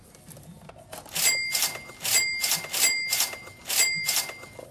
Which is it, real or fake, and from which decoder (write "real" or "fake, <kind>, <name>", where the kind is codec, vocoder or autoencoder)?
real